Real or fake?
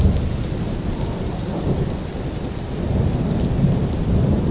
real